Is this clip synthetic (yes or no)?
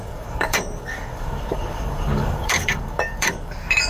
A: yes